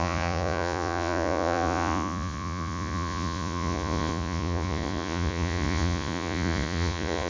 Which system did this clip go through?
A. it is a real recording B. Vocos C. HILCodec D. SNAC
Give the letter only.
B